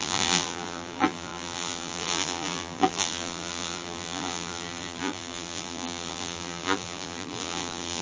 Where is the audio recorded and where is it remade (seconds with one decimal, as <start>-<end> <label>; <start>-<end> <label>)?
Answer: 0.0-8.0 remade